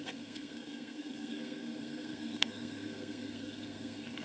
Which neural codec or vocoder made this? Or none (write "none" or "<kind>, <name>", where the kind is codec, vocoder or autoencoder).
codec, SNAC